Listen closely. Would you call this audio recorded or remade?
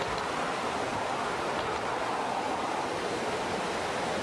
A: recorded